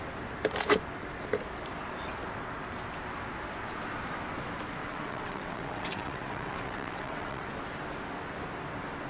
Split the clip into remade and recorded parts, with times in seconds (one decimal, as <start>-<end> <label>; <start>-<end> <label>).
0.0-4.8 recorded; 4.8-7.5 remade; 7.5-9.1 recorded